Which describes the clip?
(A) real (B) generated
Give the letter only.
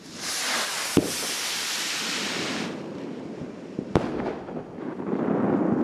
B